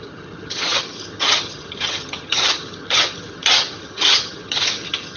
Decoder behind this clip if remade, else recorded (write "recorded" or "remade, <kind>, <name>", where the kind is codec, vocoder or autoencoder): remade, vocoder, HiFi-GAN